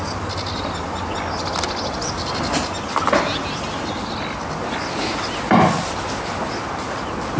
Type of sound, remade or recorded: recorded